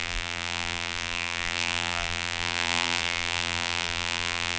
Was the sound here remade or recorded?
remade